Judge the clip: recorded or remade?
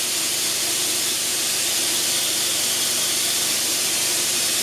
remade